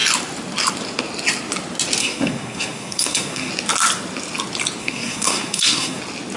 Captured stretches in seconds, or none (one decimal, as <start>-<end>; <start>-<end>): 0.0-2.0; 3.5-4.8; 6.0-6.4